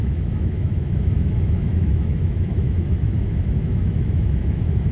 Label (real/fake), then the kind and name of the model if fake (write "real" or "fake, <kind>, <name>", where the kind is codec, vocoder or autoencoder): fake, autoencoder, DAC-VAE